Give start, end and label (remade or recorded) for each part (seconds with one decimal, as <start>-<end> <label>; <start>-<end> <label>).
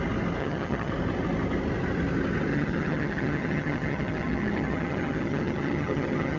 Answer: 0.0-0.4 recorded; 0.4-0.9 remade; 0.9-2.5 recorded; 2.5-6.4 remade